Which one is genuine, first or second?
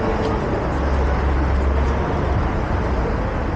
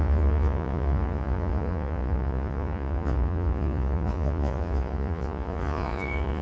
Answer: first